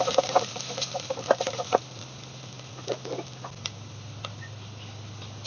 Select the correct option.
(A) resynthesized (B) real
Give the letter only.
B